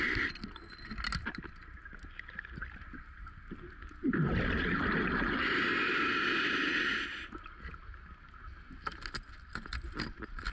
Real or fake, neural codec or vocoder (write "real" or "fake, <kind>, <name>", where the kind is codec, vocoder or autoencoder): real